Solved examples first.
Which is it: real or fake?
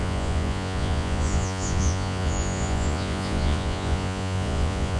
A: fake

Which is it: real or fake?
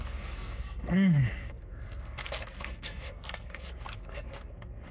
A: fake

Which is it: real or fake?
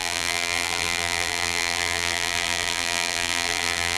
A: fake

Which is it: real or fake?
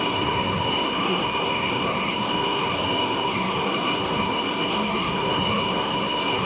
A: fake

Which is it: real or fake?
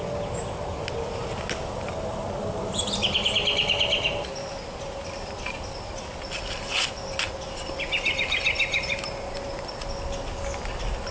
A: real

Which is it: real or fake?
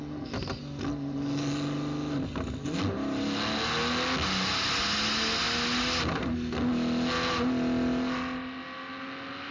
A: real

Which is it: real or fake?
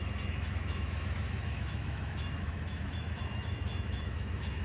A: fake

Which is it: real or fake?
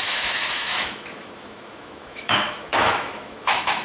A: fake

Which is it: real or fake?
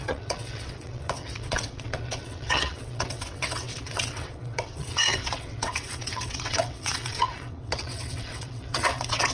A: fake